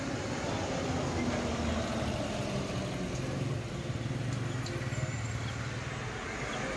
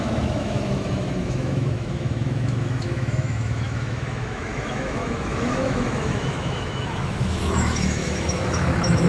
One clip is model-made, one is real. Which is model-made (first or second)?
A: second